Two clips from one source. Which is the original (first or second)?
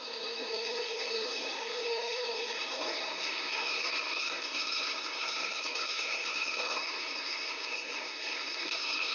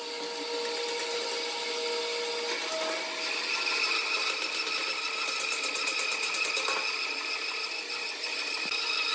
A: second